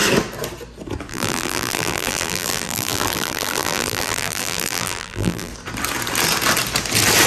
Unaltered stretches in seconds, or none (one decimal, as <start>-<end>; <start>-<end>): 0.0-1.1; 5.5-7.3

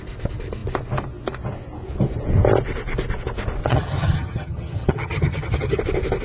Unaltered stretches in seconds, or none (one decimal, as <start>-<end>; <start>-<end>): 0.0-3.6; 5.8-6.2

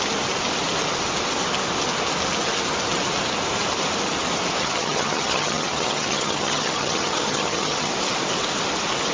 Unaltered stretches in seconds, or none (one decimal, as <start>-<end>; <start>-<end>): 0.0-4.6; 7.9-9.1

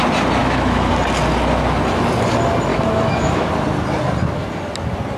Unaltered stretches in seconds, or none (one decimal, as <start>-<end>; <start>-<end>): 0.0-0.4; 0.9-2.7; 3.5-5.2

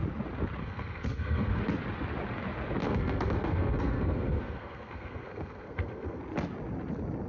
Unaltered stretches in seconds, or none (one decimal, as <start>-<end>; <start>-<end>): 0.0-0.6; 1.6-2.8; 6.2-7.3